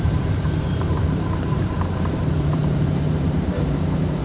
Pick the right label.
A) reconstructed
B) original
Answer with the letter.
A